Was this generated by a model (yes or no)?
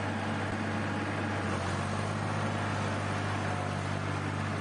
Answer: no